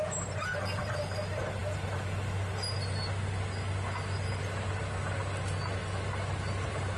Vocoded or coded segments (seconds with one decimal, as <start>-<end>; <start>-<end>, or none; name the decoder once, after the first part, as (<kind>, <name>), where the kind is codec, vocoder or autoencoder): none

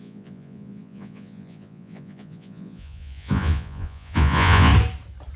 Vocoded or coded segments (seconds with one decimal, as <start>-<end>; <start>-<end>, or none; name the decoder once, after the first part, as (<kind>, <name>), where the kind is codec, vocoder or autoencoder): 0.0-4.7 (vocoder, Vocos)

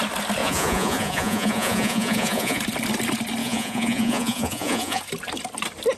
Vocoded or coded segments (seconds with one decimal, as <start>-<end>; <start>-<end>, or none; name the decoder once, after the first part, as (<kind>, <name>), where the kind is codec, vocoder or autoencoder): 0.4-2.6 (vocoder, Vocos); 3.4-5.0

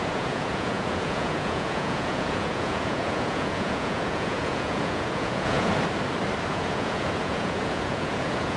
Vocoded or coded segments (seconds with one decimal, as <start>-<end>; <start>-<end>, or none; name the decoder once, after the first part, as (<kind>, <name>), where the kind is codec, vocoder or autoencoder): 0.0-5.7 (vocoder, Vocos); 6.5-8.6

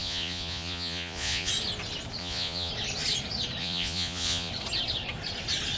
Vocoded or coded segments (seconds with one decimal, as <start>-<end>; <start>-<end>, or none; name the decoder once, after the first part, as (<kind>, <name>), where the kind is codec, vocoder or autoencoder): 0.0-1.5 (vocoder, Vocos); 2.2-2.7; 3.6-4.5

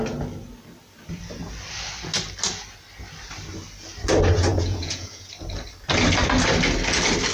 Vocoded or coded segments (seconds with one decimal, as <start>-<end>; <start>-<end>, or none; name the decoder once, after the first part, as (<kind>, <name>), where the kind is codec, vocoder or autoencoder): 4.5-5.3 (vocoder, Vocos)

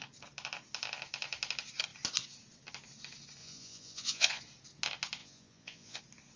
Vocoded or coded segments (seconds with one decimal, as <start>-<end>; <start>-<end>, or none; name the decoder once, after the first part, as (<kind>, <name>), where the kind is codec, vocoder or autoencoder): 3.4-4.4 (vocoder, Vocos); 5.2-6.0